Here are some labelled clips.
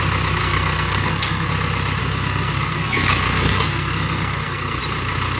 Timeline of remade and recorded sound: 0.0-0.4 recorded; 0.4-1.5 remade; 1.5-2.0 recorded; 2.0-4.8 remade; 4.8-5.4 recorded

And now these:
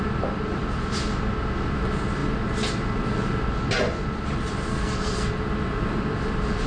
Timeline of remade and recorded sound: 0.0-4.7 recorded; 4.7-5.3 remade; 5.3-6.7 recorded

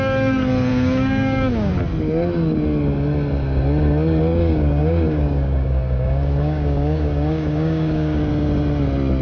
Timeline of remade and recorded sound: 0.0-0.7 recorded; 0.7-1.7 remade; 1.7-4.3 recorded; 4.3-8.3 remade; 8.3-9.2 recorded

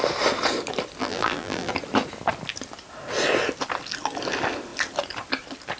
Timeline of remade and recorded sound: 0.0-1.0 recorded; 1.0-1.7 remade; 1.7-5.8 recorded

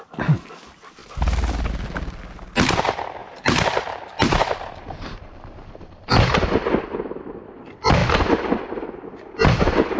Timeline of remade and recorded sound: 0.0-3.2 recorded; 3.2-4.0 remade; 4.0-4.8 recorded; 4.8-6.3 remade; 6.3-10.0 recorded

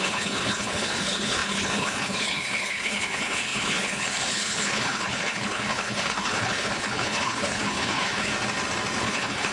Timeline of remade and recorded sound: 0.0-8.3 remade; 8.3-9.0 recorded; 9.0-9.5 remade

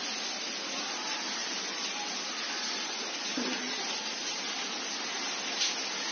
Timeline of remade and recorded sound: 0.0-3.3 recorded; 3.3-3.8 remade; 3.8-6.1 recorded